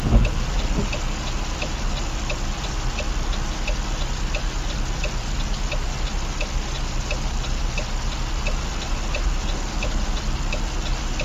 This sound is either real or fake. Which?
real